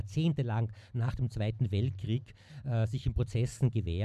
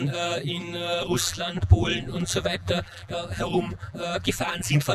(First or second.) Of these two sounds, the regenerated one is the second